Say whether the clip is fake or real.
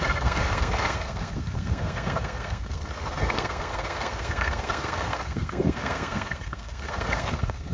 fake